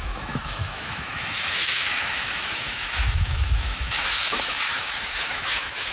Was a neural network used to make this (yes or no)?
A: yes